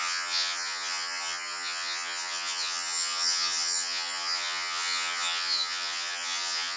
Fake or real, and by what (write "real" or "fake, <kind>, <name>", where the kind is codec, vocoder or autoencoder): fake, vocoder, HiFi-GAN